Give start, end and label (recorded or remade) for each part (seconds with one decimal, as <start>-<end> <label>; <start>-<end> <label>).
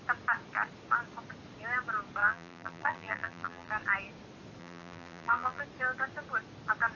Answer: 0.0-2.2 recorded; 2.2-3.7 remade; 3.7-4.6 recorded; 4.6-5.6 remade; 5.6-7.0 recorded